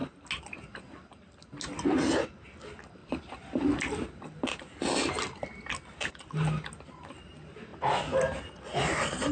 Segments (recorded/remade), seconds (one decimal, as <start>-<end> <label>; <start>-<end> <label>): 0.0-9.3 recorded